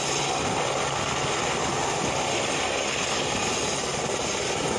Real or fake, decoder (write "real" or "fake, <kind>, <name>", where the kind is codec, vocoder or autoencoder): real